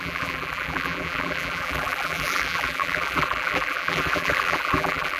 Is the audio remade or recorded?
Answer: remade